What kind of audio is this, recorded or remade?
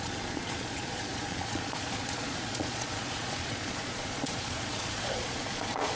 remade